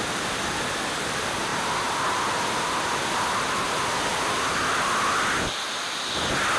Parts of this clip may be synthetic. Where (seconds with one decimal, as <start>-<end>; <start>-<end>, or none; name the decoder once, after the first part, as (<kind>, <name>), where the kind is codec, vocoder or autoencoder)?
4.1-5.2 (vocoder, BigVGAN v2)